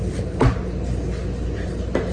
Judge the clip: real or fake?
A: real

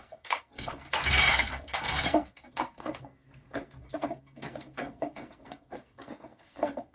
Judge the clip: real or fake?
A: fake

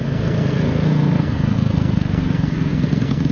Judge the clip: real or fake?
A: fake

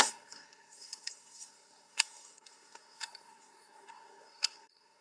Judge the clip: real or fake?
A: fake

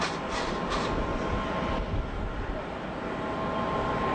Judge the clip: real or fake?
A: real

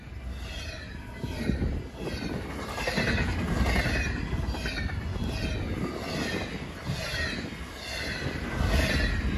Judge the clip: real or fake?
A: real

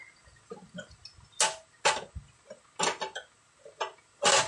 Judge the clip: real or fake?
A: real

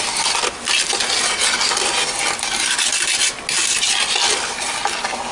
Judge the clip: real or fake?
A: real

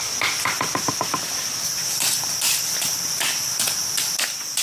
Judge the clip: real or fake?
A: real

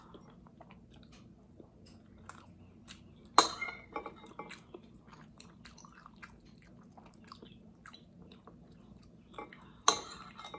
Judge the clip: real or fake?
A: real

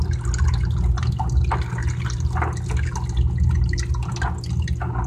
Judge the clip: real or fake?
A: real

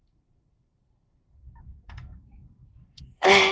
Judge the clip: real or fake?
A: fake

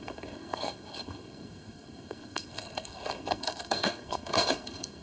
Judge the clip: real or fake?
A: fake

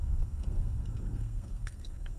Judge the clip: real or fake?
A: fake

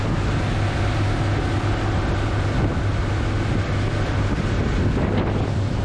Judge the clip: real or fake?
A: real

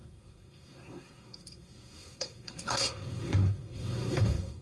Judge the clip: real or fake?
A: fake